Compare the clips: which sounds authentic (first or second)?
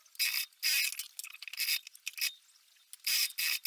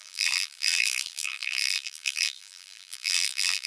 first